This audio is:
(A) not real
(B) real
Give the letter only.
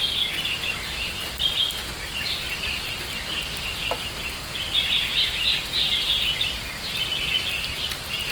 B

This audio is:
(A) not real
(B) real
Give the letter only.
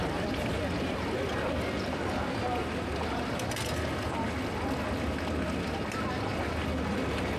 B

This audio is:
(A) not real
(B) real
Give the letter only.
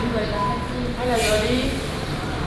B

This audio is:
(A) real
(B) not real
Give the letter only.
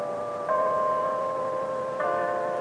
B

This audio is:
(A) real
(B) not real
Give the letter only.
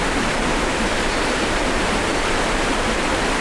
B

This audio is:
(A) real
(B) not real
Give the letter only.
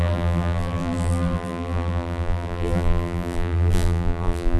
B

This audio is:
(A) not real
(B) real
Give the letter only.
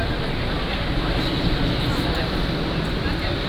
B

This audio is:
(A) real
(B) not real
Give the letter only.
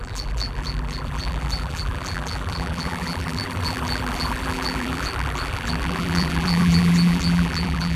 B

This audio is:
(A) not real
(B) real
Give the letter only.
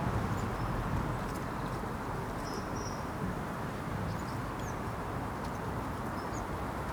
A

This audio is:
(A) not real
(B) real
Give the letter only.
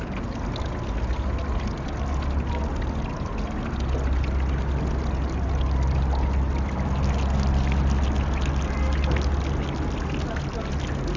B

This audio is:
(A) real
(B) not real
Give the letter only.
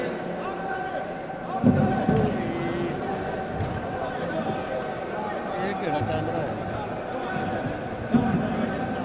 A